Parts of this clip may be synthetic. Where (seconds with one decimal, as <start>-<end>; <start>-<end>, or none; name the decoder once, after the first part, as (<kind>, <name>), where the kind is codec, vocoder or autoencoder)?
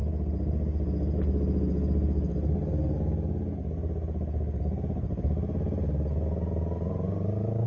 none